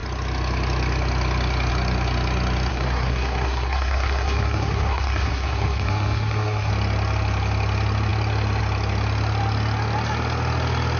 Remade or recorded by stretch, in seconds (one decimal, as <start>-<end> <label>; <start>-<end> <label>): 0.0-2.7 recorded; 2.7-6.7 remade; 6.7-11.0 recorded